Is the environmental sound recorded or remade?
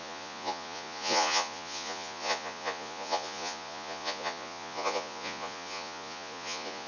remade